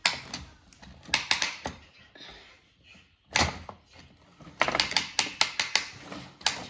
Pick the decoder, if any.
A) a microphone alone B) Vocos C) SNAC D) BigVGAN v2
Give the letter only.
A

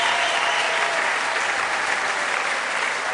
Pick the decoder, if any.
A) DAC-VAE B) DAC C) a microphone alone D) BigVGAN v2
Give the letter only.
C